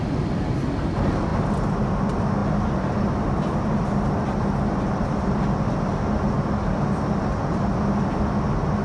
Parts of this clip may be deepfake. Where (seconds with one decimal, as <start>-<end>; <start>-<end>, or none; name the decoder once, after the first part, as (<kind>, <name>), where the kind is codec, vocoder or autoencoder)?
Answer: none